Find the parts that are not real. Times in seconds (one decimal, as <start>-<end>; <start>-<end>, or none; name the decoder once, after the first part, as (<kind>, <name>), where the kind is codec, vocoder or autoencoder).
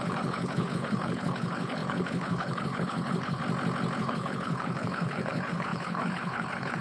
0.0-3.4 (codec, HILCodec); 4.0-6.8